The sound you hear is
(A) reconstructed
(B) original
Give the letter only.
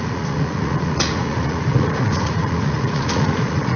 A